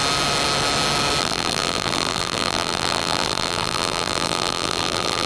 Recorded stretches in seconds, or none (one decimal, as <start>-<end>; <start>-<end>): 0.0-1.2